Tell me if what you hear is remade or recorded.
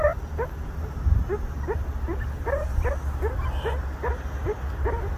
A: recorded